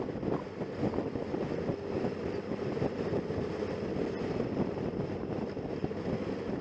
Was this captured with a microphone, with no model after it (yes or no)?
yes